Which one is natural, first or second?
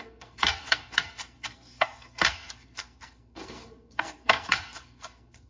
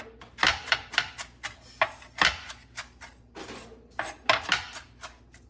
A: second